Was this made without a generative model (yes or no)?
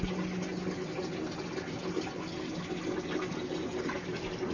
yes